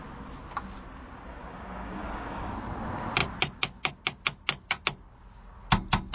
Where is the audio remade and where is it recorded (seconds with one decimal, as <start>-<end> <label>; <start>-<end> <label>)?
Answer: 0.0-1.4 recorded; 1.4-2.5 remade; 2.5-6.1 recorded